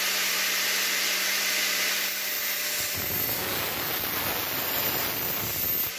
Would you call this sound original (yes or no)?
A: yes